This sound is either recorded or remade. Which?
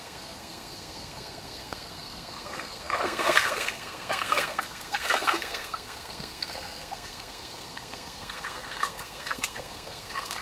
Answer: remade